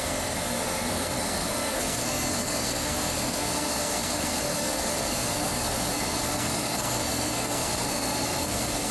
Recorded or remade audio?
remade